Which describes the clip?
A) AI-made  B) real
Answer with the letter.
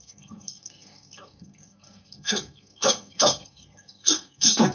A